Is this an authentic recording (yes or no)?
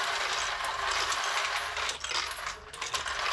yes